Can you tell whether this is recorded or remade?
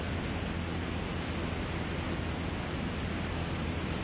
recorded